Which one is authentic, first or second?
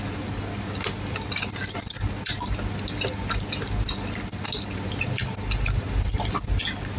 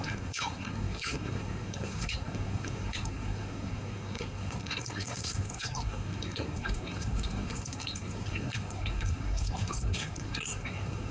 first